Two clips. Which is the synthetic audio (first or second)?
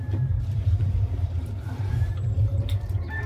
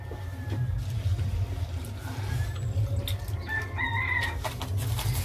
first